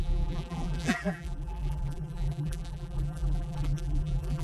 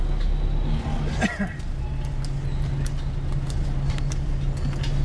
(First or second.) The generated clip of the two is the first